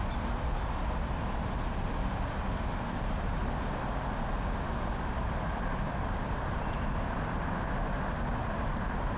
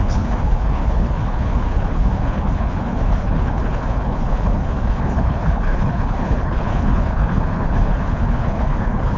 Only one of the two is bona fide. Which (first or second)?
first